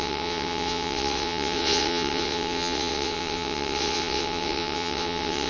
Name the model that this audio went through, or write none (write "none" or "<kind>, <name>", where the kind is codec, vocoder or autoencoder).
vocoder, WaveNeXt